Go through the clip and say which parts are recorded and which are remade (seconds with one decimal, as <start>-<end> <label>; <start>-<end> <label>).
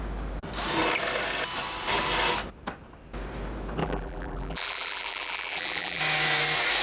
0.0-3.8 recorded; 3.8-6.0 remade; 6.0-6.8 recorded